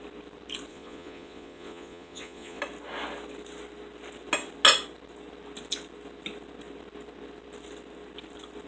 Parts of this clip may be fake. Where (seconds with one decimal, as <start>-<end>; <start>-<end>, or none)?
0.7-2.6